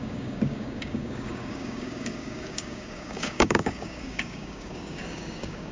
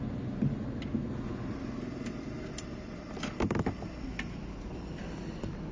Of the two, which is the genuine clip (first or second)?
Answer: second